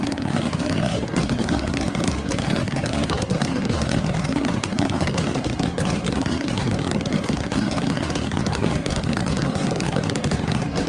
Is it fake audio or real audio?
fake